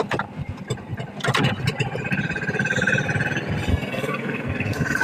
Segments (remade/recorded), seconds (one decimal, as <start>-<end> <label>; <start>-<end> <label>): 0.0-3.7 recorded; 3.7-5.0 remade